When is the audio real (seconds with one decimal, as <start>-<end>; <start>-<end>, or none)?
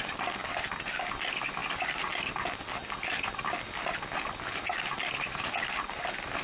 0.0-6.4